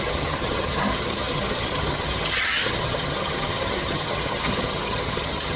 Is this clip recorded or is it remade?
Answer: remade